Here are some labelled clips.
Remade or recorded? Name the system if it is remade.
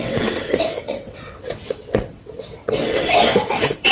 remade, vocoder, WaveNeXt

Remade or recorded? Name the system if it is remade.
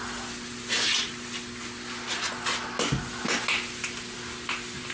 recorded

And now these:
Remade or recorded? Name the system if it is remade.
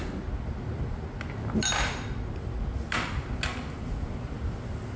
recorded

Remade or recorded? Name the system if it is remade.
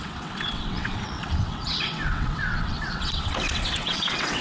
remade, vocoder, WaveNeXt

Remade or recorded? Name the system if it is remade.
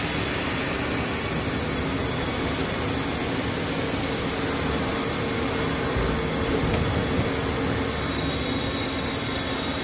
recorded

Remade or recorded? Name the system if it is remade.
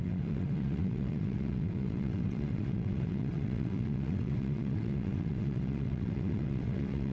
remade, vocoder, WaveNeXt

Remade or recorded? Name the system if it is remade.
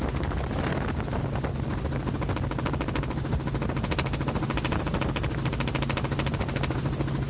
recorded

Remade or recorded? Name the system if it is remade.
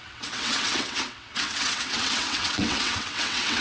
remade, vocoder, WaveNeXt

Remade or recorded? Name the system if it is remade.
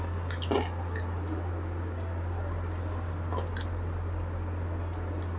recorded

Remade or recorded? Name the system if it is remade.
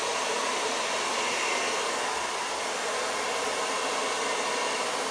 recorded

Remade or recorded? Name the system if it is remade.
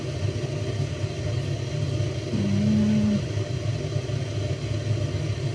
recorded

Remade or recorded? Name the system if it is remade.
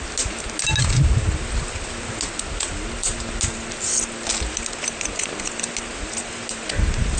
recorded